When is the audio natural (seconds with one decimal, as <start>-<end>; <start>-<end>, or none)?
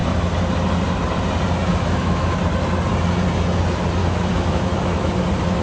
0.0-1.7; 2.4-4.0; 5.1-5.6